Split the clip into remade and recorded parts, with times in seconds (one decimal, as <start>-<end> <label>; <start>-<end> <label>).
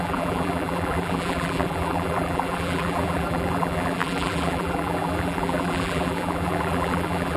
0.0-7.4 remade